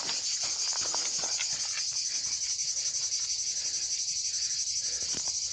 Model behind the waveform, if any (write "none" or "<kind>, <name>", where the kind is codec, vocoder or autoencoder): none